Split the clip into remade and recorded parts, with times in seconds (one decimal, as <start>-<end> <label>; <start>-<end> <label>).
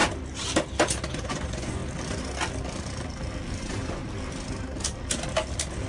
0.0-1.1 recorded; 1.1-1.8 remade; 1.8-3.6 recorded; 3.6-4.0 remade; 4.0-5.9 recorded